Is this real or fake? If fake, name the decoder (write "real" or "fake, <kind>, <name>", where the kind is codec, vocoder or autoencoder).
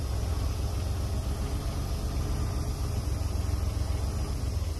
real